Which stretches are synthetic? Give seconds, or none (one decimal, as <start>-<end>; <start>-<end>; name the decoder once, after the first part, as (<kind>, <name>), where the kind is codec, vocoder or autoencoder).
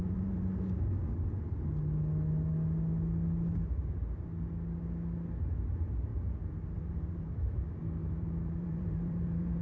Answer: 0.0-1.0 (vocoder, BigVGAN v2); 6.1-7.6; 8.0-9.6